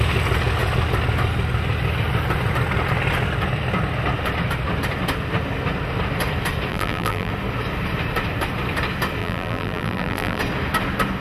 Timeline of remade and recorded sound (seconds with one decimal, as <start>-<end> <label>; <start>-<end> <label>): 0.0-6.7 recorded; 6.7-7.3 remade; 7.3-9.2 recorded; 9.2-10.4 remade; 10.4-11.2 recorded